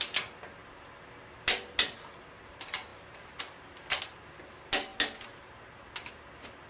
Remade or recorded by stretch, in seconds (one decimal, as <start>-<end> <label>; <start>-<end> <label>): 0.0-2.9 recorded; 2.9-4.0 remade; 4.0-6.7 recorded